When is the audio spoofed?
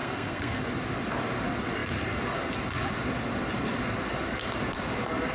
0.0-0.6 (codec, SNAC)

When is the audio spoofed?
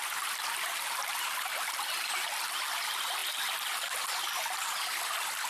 none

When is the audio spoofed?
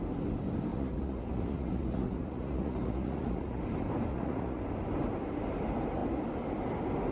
0.7-3.6 (vocoder, Vocos); 4.1-4.6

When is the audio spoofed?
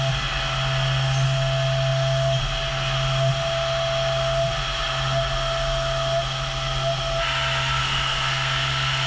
7.8-9.1 (codec, SNAC)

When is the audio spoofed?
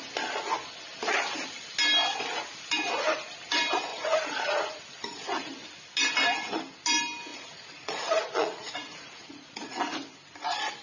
3.9-4.8 (vocoder, Vocos); 7.3-9.8